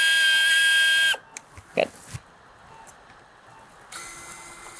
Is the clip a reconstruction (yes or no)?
no